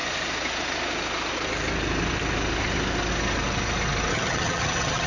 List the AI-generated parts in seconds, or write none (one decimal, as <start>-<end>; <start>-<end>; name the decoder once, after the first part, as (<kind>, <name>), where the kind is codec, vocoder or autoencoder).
4.1-5.1 (vocoder, HiFi-GAN)